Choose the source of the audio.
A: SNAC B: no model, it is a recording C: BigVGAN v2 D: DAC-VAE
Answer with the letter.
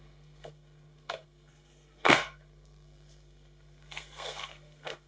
A